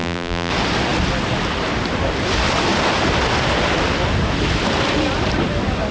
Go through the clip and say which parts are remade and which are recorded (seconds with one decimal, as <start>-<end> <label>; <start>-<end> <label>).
0.0-0.5 remade; 0.5-5.9 recorded